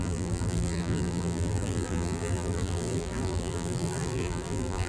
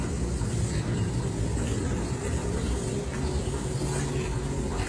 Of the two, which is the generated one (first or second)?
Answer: first